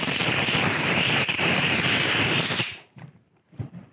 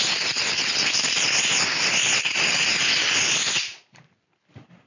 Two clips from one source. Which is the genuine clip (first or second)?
second